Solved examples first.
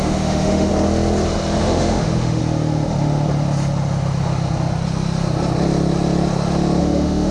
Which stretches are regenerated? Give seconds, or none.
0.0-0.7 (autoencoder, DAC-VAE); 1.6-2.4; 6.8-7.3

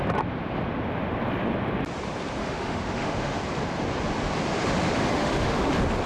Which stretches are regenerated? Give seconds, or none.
2.4-3.4 (autoencoder, DAC-VAE); 5.1-5.6

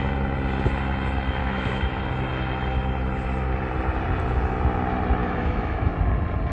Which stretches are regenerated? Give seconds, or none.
1.4-2.0 (autoencoder, DAC-VAE); 5.2-5.9

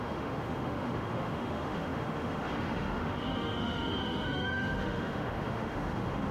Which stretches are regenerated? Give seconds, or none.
0.0-6.3 (autoencoder, DAC-VAE)

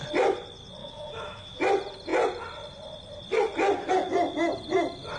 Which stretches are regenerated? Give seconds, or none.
0.8-1.6 (autoencoder, DAC-VAE)

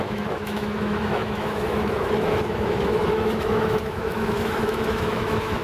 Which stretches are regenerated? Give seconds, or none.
0.0-5.6 (autoencoder, DAC-VAE)